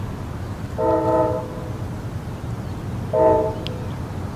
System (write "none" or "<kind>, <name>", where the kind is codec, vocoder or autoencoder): none